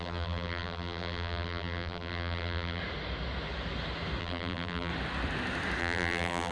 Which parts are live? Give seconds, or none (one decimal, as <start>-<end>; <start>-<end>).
2.8-4.2; 4.9-5.8

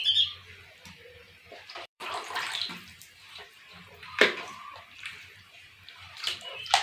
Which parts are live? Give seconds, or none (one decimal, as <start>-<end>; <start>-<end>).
0.0-0.9

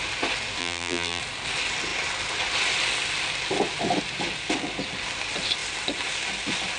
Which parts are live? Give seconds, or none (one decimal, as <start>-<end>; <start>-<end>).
0.0-0.6; 1.2-6.8